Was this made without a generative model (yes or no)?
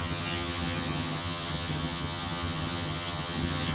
no